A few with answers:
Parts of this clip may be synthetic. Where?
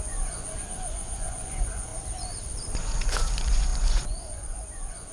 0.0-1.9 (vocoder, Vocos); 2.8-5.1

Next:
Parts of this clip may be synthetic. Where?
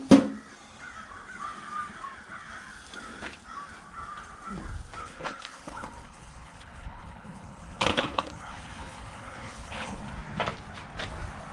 5.0-10.0 (codec, HILCodec)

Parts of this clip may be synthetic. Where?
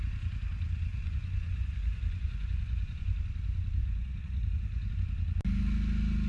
0.9-3.1 (vocoder, Vocos); 3.8-4.9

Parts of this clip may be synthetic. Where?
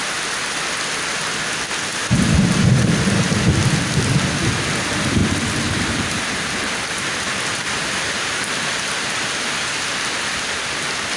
1.9-2.9 (vocoder, BigVGAN v2); 5.2-9.1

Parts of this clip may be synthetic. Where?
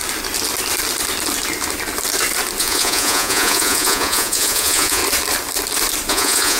2.6-5.0 (vocoder, Vocos); 6.1-6.6